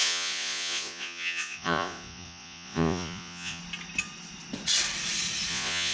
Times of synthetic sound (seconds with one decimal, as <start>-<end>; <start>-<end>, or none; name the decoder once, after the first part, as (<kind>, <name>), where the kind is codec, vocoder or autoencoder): 0.0-3.6 (vocoder, Vocos); 5.5-5.9